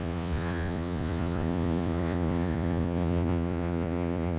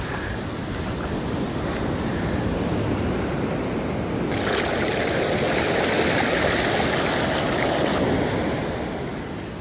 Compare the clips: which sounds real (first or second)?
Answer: second